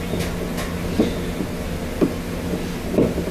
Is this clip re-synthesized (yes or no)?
no